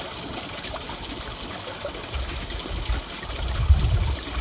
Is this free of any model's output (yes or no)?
yes